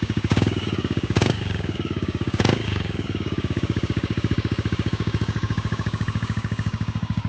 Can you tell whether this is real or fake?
fake